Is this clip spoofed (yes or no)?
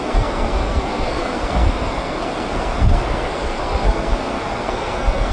yes